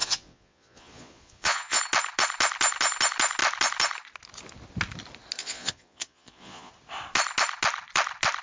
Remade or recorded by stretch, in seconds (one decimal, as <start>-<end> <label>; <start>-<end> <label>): 0.0-1.8 remade; 1.8-5.4 recorded; 5.4-6.7 remade; 6.7-8.4 recorded